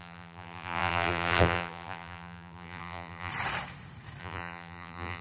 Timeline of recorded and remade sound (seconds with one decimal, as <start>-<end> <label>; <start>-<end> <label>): 0.0-3.3 remade; 3.3-4.2 recorded; 4.2-5.2 remade